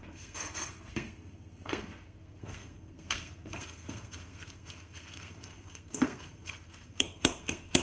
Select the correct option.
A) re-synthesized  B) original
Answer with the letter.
A